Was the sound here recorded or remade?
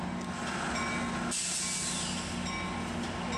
recorded